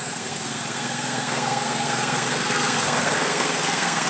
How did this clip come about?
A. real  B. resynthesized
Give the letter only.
B